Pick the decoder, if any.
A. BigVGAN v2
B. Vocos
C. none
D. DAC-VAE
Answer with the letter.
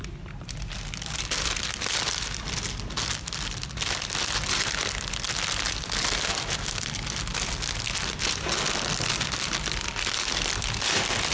C